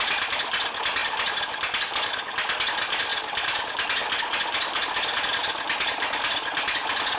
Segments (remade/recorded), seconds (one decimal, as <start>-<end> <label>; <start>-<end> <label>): 0.0-7.2 recorded